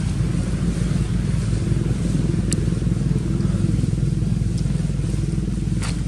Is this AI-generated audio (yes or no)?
no